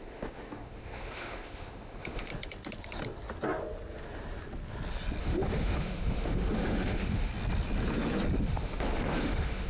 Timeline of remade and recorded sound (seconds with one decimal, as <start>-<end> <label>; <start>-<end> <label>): 0.0-2.3 remade; 2.3-5.2 recorded; 5.2-7.3 remade; 7.3-8.4 recorded; 8.4-9.7 remade

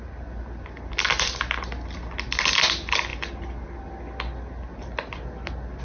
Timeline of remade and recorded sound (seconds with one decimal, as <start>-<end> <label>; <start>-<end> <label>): 0.0-5.8 recorded

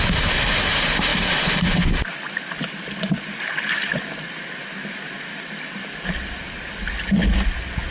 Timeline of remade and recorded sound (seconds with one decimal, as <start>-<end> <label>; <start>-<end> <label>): 0.0-7.9 recorded

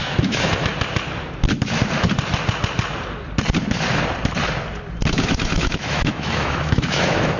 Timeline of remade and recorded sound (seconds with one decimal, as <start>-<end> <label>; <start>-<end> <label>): 0.0-0.7 remade; 0.7-5.1 recorded; 5.1-7.4 remade